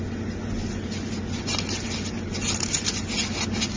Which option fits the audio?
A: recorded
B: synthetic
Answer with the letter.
A